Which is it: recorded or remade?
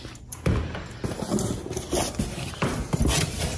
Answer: recorded